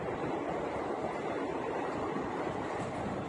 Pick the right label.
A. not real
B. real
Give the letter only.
A